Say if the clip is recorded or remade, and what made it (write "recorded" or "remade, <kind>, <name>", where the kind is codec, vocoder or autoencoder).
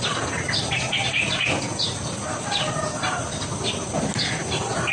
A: recorded